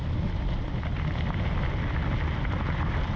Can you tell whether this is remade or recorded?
recorded